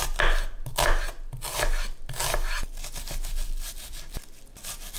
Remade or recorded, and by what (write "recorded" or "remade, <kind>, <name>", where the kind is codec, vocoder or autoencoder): recorded